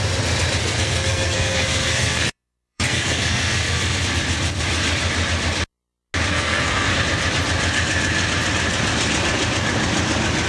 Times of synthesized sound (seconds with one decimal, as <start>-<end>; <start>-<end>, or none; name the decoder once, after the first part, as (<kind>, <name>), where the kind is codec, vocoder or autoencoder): 0.6-4.0 (codec, SNAC); 6.3-6.9